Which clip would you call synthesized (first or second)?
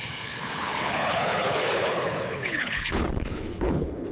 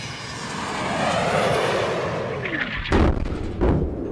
first